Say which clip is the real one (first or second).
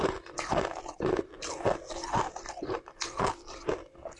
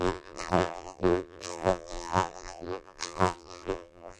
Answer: first